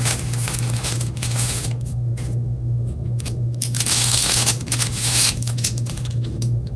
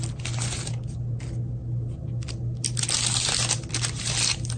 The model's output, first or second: first